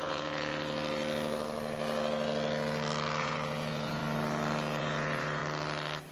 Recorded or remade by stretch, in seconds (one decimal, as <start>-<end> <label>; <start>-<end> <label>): 0.0-0.5 remade; 0.5-3.2 recorded; 3.2-4.0 remade; 4.0-4.8 recorded; 4.8-5.4 remade; 5.4-6.1 recorded